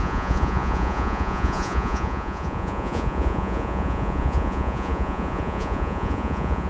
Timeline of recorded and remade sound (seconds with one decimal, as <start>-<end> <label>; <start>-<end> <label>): 0.0-6.7 remade